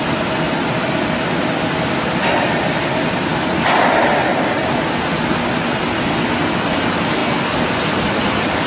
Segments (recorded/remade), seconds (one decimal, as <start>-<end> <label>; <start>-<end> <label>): 0.0-8.7 recorded